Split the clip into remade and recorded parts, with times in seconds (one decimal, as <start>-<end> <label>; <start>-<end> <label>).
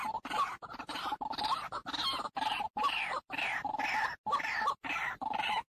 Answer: 0.0-0.5 recorded; 0.5-1.8 remade; 1.8-2.3 recorded; 2.3-5.7 remade